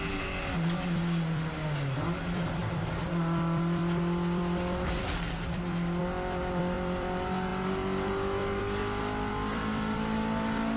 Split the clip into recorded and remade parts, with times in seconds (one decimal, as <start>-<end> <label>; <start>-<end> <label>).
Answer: 0.0-10.8 recorded